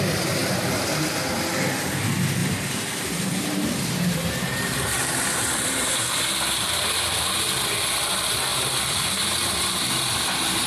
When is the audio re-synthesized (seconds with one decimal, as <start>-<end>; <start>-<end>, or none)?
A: 2.4-6.7; 8.5-10.7

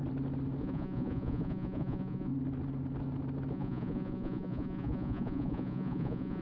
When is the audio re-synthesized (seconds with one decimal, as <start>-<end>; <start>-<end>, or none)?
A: 0.6-2.3; 3.5-6.4

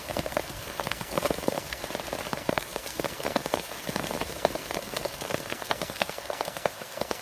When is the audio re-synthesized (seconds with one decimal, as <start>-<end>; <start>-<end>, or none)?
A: 0.0-1.8; 2.3-7.2

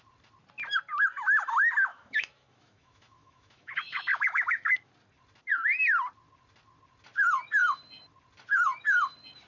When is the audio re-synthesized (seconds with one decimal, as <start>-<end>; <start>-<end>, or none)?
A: 1.9-4.9

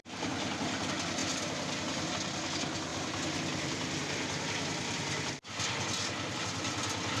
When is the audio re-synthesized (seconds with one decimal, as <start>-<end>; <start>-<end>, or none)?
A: none